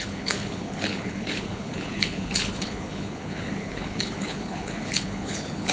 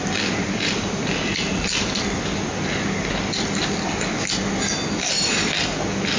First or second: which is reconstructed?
first